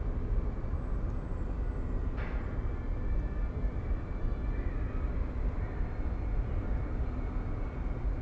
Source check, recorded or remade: recorded